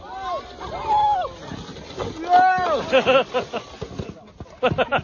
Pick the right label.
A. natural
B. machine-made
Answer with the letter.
A